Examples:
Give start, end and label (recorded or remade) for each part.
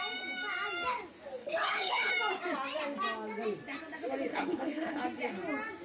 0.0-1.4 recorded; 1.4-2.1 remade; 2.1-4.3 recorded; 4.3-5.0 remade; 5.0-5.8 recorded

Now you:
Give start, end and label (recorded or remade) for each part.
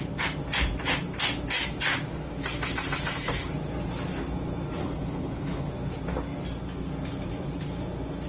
0.0-4.8 recorded; 4.8-5.7 remade; 5.7-8.3 recorded